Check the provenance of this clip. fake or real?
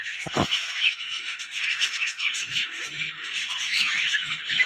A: fake